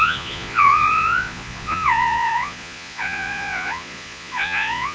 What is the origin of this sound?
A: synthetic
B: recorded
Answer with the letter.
A